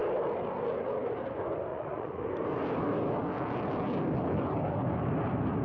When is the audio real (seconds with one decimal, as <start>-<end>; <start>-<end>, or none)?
0.0-1.7; 2.3-5.6